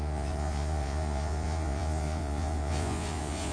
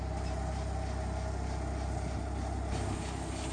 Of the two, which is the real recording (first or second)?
second